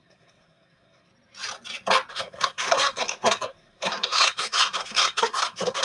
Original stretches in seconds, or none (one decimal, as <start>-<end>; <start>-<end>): 1.1-2.1